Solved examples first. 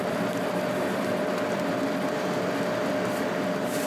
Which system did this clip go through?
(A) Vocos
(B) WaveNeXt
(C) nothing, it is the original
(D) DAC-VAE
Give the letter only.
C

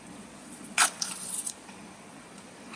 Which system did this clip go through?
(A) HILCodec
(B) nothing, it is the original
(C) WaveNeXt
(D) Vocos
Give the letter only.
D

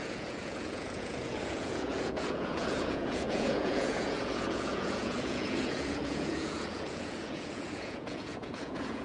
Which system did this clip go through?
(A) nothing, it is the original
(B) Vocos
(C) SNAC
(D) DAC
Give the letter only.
B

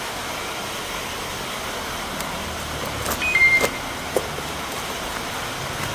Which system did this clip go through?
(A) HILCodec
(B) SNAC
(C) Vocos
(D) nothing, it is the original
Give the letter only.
D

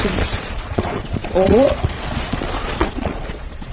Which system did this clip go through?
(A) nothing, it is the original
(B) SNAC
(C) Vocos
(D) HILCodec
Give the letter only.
C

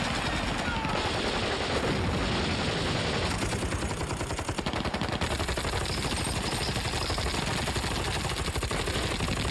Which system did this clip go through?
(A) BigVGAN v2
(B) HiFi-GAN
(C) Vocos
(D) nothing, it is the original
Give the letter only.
D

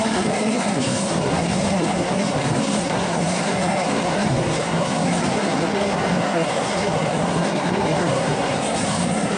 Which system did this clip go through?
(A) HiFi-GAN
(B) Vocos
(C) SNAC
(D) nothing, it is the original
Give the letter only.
C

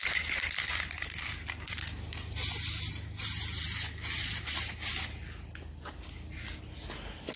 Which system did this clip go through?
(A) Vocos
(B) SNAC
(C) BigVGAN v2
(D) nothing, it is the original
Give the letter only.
D